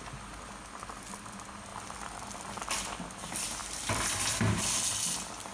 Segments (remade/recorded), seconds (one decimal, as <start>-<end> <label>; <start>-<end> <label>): 0.0-5.5 recorded